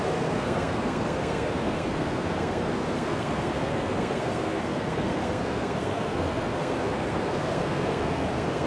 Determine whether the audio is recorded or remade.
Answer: remade